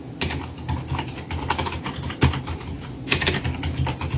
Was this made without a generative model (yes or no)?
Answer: yes